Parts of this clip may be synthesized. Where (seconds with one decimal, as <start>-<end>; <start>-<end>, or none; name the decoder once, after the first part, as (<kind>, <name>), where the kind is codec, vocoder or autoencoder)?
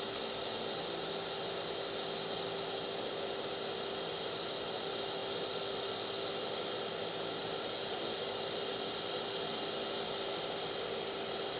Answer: none